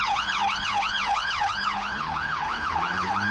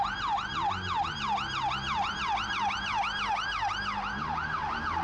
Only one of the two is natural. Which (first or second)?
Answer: second